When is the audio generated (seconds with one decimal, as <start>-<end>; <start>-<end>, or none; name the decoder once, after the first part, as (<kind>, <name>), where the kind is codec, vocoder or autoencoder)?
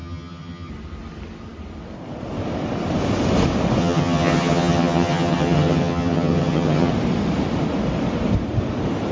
0.0-0.7 (vocoder, HiFi-GAN); 3.8-6.9